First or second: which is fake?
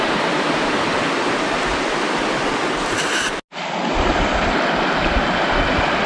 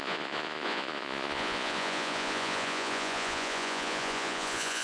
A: second